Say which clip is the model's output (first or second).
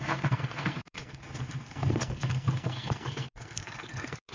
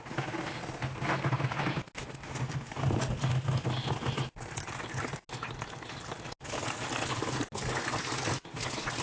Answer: first